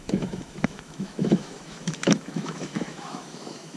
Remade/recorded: remade